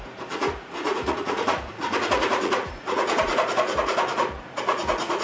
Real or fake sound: fake